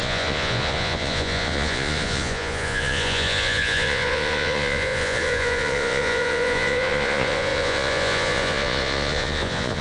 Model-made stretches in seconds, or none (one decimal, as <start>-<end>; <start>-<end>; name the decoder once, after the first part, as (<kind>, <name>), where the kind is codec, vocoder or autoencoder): 0.0-9.8 (vocoder, Vocos)